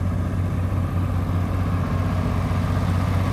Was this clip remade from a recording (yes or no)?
no